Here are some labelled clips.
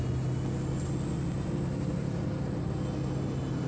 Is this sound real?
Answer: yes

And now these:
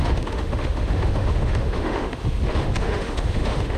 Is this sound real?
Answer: no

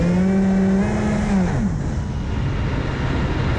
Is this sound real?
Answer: yes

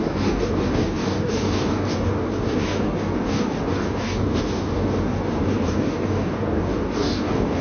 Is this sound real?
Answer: no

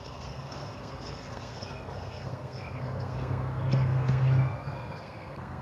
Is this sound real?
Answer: no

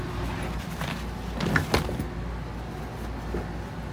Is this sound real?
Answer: yes